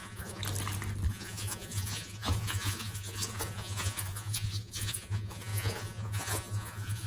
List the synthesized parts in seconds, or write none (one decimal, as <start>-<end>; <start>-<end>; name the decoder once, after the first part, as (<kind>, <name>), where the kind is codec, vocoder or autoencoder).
0.0-0.4 (vocoder, Vocos); 1.1-7.1

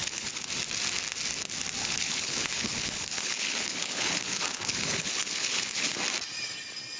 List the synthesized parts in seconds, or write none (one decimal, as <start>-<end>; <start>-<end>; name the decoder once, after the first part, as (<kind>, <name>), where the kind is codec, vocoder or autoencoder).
0.0-0.5 (codec, HILCodec); 1.8-6.0

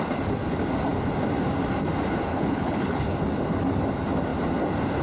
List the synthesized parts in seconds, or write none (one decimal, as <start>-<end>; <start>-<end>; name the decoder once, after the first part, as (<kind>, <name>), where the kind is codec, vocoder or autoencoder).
2.3-3.0 (codec, HILCodec)

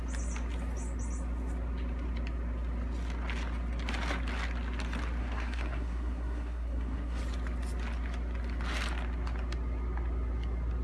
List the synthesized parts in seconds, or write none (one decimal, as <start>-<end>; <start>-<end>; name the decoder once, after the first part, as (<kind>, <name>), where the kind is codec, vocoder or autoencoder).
5.2-7.2 (codec, SNAC)

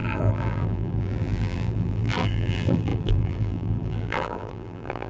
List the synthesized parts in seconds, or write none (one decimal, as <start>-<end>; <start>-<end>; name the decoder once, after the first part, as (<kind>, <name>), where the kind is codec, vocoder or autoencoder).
0.0-5.1 (vocoder, BigVGAN v2)

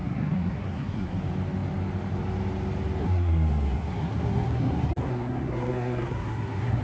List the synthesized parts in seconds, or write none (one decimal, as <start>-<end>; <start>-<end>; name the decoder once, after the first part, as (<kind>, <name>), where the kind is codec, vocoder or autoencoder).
0.0-1.2 (codec, SNAC); 3.0-6.8

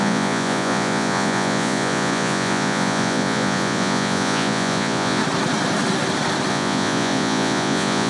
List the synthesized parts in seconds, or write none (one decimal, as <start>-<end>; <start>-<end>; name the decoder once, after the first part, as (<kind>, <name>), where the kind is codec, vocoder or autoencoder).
0.0-5.2 (vocoder, Vocos); 6.5-8.1

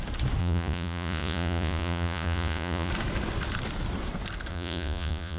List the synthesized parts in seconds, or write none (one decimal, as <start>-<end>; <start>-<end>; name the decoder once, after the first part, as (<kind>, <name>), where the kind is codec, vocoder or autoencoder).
0.4-2.9 (vocoder, Vocos); 4.5-5.4